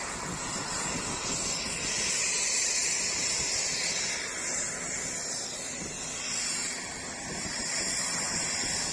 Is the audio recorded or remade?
recorded